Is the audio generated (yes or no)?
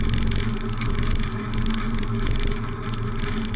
no